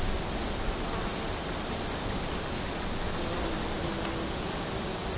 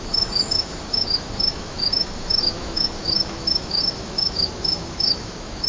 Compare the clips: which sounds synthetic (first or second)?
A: second